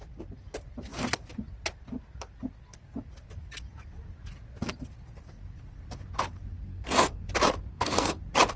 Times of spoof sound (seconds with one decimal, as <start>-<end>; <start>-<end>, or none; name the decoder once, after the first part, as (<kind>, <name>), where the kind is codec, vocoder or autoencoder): 6.7-7.3 (codec, SNAC); 7.7-8.2